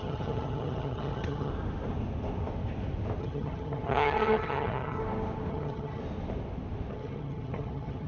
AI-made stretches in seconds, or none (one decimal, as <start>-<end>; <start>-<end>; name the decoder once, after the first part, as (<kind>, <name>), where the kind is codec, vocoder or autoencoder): 0.0-1.5 (vocoder, HiFi-GAN); 3.2-5.0; 5.5-6.0; 6.9-8.1